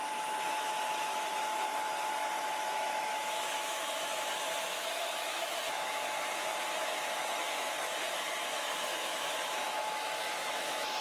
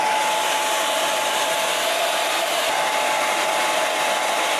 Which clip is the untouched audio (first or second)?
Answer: second